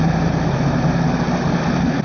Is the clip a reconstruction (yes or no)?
no